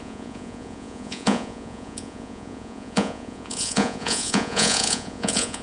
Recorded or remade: remade